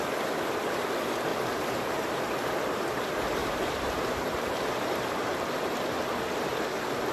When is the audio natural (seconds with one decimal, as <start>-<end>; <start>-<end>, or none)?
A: 0.0-1.3; 2.3-3.4; 5.4-7.1